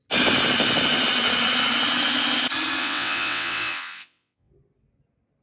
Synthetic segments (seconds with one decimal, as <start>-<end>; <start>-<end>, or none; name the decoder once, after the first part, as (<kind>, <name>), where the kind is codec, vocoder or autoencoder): 2.8-4.5 (vocoder, WaveNeXt)